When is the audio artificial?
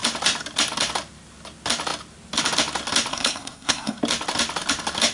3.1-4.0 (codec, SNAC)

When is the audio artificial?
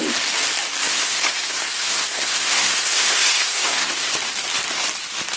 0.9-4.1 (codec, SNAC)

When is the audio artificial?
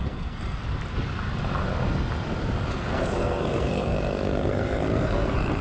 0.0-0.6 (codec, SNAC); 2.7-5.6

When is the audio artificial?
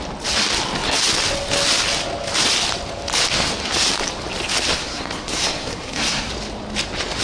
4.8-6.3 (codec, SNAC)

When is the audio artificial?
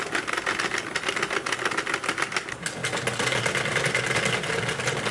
none